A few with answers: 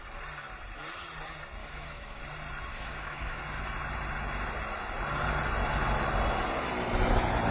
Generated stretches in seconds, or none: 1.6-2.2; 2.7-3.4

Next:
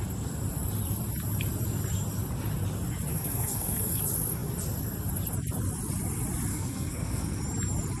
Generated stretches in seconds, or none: 3.1-4.0; 6.5-7.4

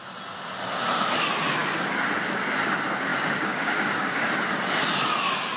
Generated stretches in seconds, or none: 3.1-4.3

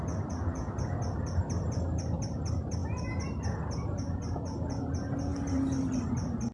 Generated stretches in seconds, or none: none

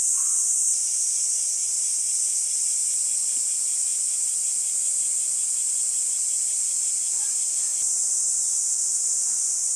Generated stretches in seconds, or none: none

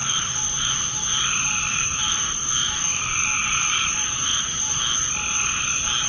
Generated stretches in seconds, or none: 0.0-0.7; 1.1-4.8